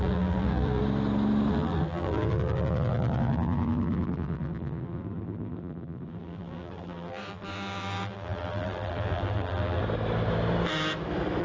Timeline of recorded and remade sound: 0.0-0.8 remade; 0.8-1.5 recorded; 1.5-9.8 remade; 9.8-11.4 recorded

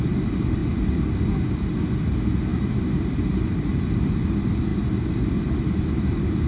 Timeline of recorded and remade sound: 0.0-2.5 recorded; 2.5-3.8 remade; 3.8-6.5 recorded

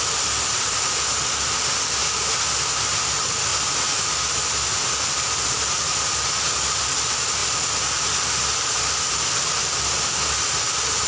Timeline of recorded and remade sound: 0.0-2.0 remade; 2.0-2.8 recorded; 2.8-3.5 remade; 3.5-6.9 recorded; 6.9-7.4 remade; 7.4-9.0 recorded; 9.0-9.6 remade; 9.6-10.5 recorded; 10.5-11.1 remade

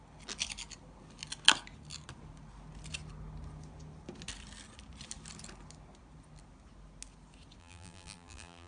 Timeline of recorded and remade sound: 0.0-7.6 recorded; 7.6-8.7 remade

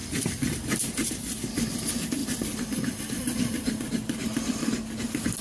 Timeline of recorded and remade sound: 0.0-2.2 recorded; 2.2-5.4 remade

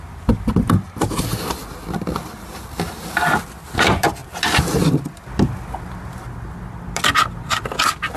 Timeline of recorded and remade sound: 0.0-8.2 recorded